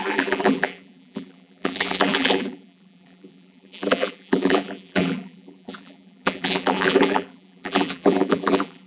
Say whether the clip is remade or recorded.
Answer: remade